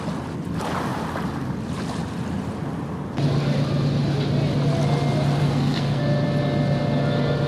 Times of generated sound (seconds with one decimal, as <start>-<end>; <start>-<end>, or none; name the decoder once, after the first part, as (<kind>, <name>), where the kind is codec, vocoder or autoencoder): 5.4-6.0 (codec, SNAC)